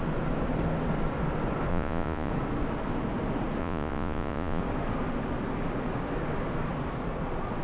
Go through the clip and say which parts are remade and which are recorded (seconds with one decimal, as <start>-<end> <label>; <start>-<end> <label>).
0.0-1.7 recorded; 1.7-2.3 remade; 2.3-3.6 recorded; 3.6-4.6 remade; 4.6-7.6 recorded